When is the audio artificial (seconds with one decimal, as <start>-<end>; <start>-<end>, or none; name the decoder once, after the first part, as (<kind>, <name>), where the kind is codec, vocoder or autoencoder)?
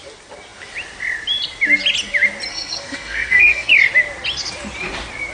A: 2.5-3.7 (codec, SNAC)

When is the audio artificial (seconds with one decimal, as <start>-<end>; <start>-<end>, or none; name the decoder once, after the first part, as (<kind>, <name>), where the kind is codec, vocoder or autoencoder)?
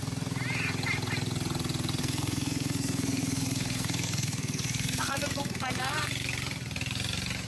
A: 2.0-6.1 (codec, SNAC)